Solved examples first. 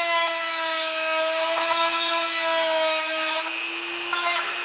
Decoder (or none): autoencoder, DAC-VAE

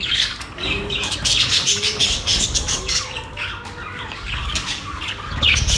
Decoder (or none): codec, DAC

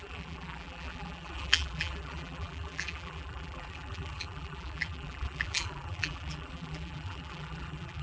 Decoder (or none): vocoder, BigVGAN v2